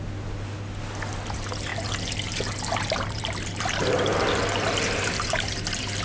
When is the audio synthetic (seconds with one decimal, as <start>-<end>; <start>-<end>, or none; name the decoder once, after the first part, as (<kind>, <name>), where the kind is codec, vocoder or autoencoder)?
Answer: none

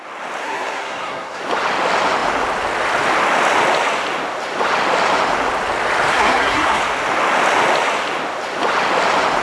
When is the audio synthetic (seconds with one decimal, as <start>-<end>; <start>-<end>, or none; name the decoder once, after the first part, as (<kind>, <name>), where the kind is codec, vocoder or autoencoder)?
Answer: 0.4-1.4 (codec, SNAC); 6.1-6.8

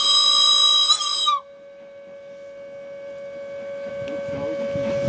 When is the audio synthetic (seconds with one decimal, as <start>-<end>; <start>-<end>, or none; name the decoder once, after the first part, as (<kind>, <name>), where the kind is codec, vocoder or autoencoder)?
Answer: none

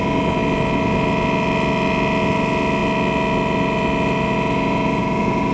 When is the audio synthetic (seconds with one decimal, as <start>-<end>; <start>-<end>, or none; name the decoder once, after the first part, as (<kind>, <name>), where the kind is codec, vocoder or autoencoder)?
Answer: none